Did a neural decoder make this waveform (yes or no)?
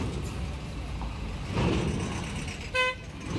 no